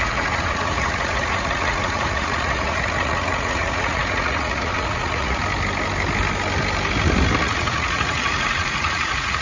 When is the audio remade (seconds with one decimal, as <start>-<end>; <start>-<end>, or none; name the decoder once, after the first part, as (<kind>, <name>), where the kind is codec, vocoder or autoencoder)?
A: 0.0-5.4 (vocoder, Vocos); 7.4-9.4